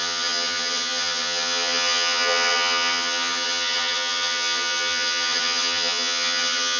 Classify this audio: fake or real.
fake